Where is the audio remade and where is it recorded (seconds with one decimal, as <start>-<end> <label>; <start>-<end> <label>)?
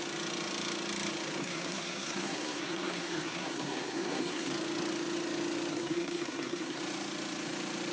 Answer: 0.0-1.4 recorded; 1.4-4.5 remade; 4.5-5.7 recorded; 5.7-6.8 remade; 6.8-7.9 recorded